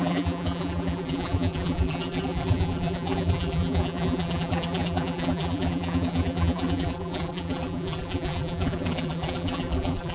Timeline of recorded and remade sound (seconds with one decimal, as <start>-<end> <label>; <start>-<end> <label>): 0.0-10.1 remade